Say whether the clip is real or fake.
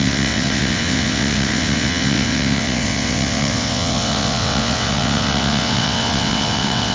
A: fake